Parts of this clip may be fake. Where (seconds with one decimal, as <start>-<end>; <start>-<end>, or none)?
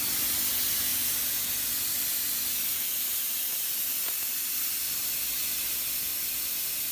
none